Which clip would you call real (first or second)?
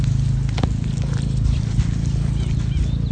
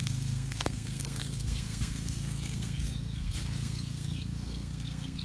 first